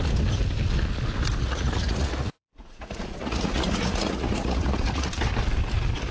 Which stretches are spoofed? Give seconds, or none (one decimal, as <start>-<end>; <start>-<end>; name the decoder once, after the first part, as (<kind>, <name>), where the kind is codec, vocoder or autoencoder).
1.4-5.1 (vocoder, Vocos)